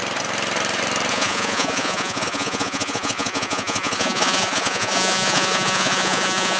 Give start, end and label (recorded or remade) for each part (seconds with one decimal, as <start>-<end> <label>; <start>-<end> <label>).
0.0-1.1 recorded; 1.1-6.6 remade